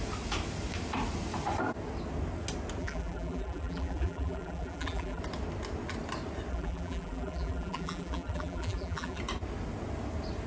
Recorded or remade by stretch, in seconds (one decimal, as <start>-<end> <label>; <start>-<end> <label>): 0.0-2.8 recorded; 2.8-5.2 remade; 5.2-6.5 recorded; 6.5-9.2 remade; 9.2-10.5 recorded